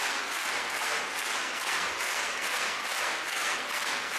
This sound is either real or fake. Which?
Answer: fake